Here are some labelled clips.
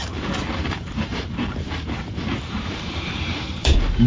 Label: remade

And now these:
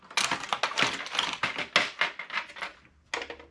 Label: recorded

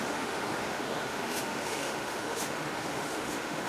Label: remade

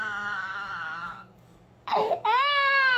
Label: remade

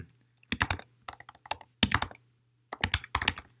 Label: recorded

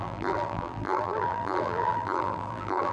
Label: remade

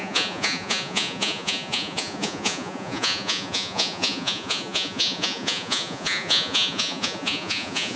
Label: remade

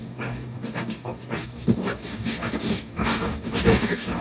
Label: remade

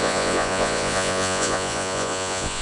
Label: remade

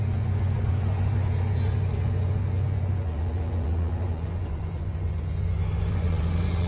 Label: remade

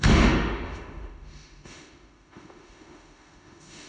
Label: remade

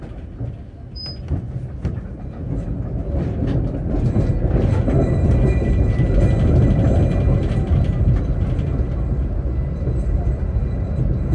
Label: recorded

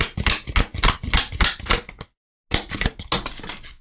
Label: recorded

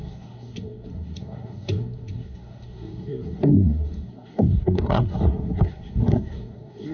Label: remade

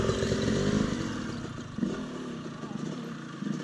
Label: recorded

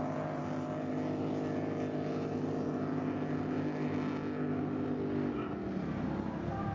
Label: recorded